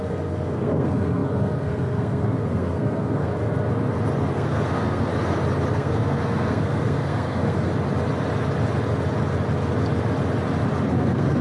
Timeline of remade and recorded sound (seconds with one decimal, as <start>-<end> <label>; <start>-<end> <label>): 0.0-3.3 remade; 3.3-4.3 recorded; 4.3-5.1 remade; 5.1-5.7 recorded; 5.7-7.7 remade; 7.7-10.9 recorded; 10.9-11.4 remade